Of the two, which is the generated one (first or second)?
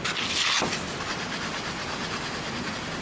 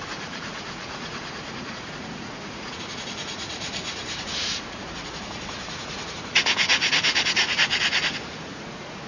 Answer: second